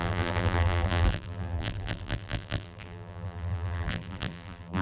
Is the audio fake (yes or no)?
yes